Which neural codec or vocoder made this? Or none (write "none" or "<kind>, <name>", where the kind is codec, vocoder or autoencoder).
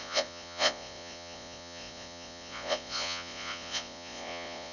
vocoder, Vocos